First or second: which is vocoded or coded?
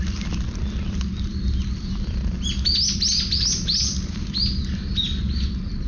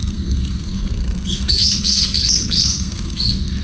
second